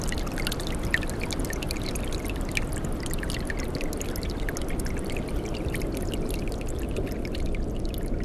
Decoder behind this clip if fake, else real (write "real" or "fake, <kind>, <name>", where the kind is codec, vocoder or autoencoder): real